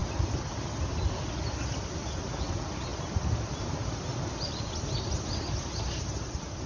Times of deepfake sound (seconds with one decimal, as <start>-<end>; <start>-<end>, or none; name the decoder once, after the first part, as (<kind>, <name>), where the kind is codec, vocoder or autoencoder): none